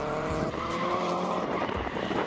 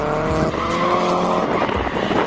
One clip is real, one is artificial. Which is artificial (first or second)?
first